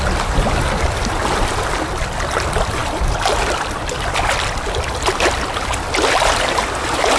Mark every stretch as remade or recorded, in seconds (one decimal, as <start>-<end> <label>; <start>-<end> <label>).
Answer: 0.0-7.2 recorded